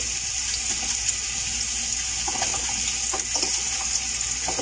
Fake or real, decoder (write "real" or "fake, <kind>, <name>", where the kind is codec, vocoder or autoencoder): real